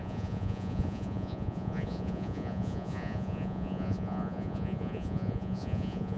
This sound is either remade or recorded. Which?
remade